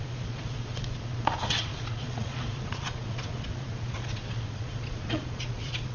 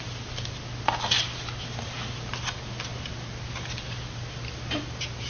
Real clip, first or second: second